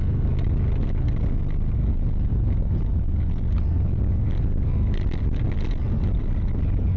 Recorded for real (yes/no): yes